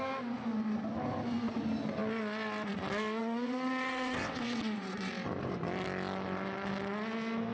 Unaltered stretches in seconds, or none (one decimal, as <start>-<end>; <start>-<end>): 0.0-3.2; 5.1-7.5